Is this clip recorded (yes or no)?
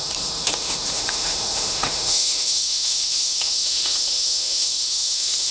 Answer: no